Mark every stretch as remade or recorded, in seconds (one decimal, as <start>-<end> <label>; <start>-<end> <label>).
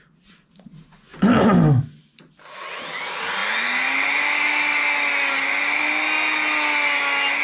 0.0-7.4 recorded